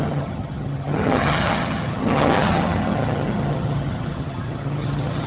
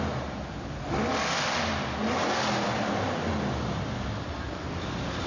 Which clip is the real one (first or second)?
second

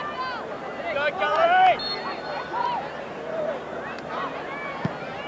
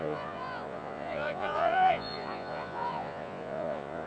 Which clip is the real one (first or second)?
first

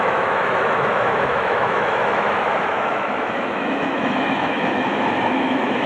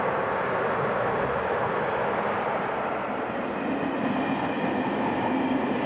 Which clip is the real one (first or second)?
second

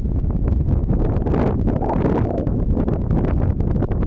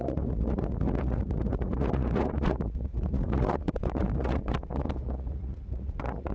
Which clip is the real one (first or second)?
first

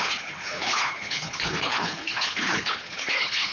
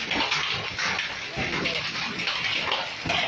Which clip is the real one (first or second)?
second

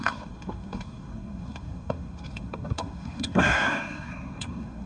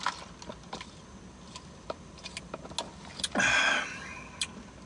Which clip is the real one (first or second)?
second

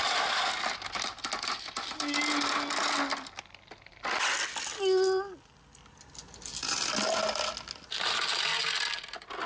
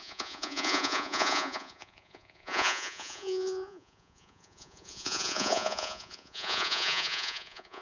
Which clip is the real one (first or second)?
first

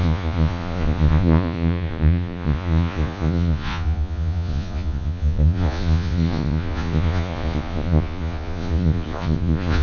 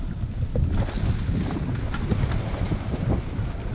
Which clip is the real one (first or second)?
second